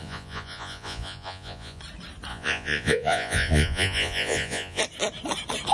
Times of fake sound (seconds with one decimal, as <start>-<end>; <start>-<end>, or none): 0.0-1.8; 2.3-4.8